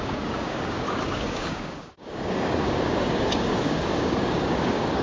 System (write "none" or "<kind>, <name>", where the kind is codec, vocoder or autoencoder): codec, DAC